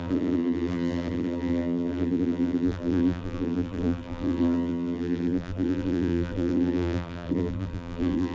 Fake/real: fake